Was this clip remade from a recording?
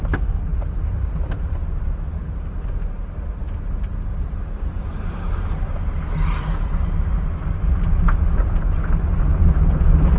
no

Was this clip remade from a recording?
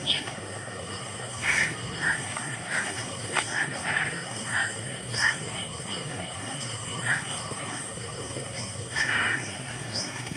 yes